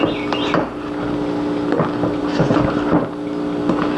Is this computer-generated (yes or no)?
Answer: no